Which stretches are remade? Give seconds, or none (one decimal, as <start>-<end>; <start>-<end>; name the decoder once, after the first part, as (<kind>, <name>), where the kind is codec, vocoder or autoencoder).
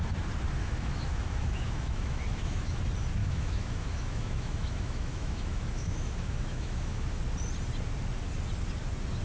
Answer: 0.6-2.8 (autoencoder, DAC-VAE); 3.2-7.2